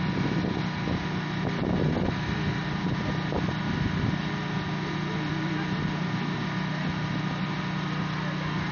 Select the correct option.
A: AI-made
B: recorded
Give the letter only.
B